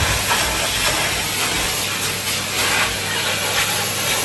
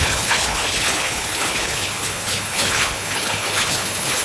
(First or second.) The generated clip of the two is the second